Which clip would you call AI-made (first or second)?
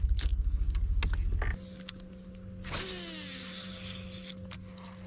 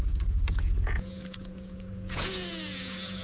second